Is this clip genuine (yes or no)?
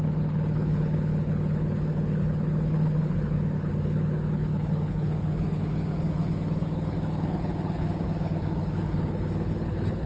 no